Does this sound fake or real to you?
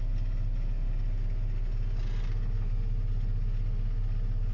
real